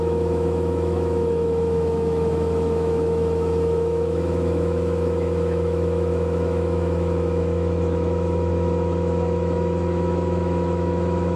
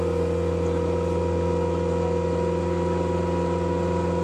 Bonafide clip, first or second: second